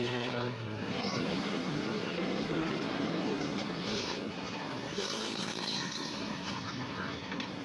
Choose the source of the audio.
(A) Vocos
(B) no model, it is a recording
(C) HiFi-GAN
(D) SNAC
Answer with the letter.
D